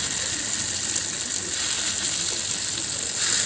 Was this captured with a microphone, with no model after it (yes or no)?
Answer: yes